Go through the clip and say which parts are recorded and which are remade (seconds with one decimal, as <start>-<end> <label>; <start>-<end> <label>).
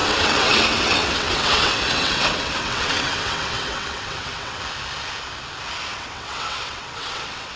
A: 0.0-4.6 remade; 4.6-5.9 recorded; 5.9-7.6 remade